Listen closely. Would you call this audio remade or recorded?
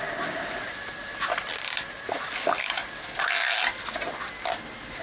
recorded